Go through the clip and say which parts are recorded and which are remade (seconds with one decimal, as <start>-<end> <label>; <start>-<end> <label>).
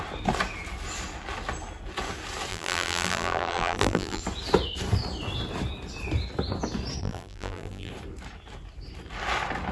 0.0-2.5 recorded; 2.5-4.2 remade; 4.2-7.0 recorded; 7.0-7.9 remade; 7.9-9.7 recorded